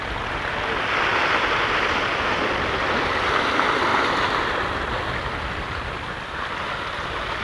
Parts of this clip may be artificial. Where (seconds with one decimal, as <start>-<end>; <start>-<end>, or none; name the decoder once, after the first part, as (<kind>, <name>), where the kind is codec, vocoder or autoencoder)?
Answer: none